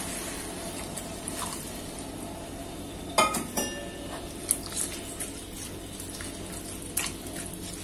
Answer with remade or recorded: recorded